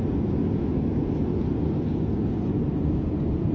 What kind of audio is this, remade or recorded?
recorded